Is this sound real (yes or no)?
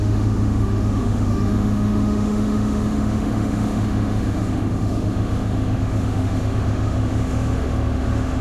no